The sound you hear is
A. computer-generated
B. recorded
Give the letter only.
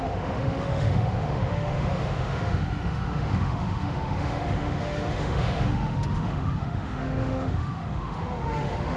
A